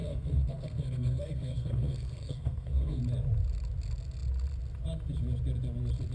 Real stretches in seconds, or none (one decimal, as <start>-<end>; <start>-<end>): 3.0-6.1